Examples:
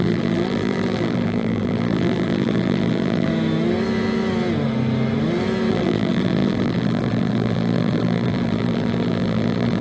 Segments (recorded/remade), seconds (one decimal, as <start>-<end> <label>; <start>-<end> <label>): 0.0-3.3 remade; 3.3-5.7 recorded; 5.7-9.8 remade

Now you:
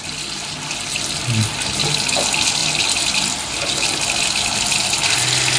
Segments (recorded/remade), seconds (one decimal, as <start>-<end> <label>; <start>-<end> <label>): 0.0-5.6 recorded

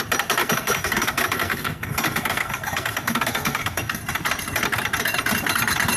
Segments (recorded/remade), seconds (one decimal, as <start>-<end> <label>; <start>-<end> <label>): 0.0-0.4 recorded; 0.4-4.0 remade; 4.0-6.0 recorded